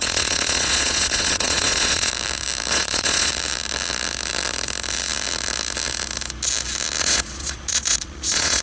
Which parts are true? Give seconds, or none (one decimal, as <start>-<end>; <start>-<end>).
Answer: 2.1-2.7; 3.3-7.0